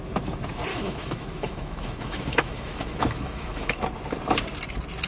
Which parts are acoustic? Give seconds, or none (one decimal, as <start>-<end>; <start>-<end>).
0.0-0.7; 3.8-5.1